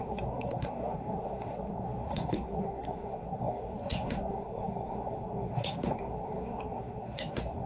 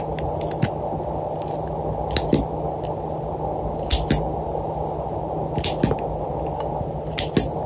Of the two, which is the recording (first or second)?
second